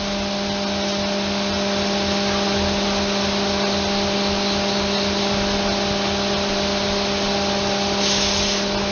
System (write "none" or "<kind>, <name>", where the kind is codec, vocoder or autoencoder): none